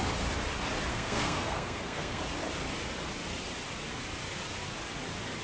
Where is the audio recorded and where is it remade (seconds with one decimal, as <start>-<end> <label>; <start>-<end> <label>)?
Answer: 0.0-0.9 recorded; 0.9-2.2 remade; 2.2-5.4 recorded